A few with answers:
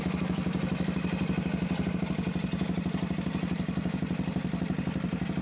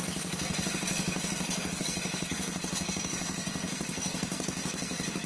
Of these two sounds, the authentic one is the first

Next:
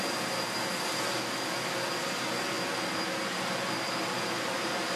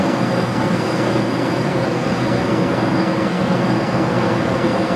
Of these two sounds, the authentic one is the first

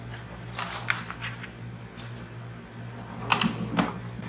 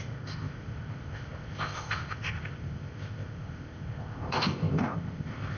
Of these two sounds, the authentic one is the first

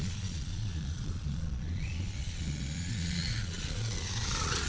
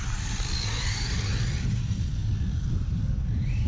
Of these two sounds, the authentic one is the second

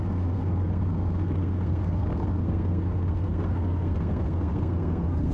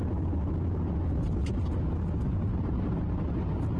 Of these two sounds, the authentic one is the second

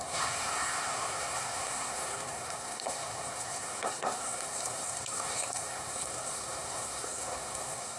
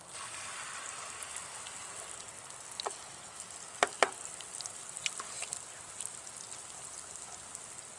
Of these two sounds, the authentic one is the second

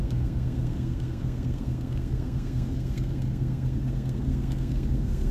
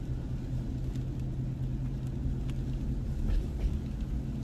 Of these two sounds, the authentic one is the second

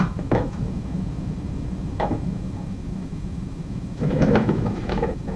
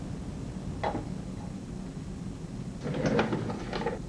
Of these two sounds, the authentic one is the second